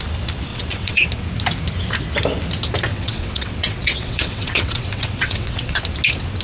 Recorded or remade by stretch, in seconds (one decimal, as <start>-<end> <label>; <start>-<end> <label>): 0.0-0.5 recorded; 0.5-1.1 remade; 1.1-2.9 recorded; 2.9-5.8 remade; 5.8-6.4 recorded